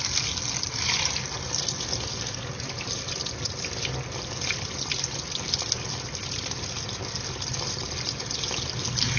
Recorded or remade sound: recorded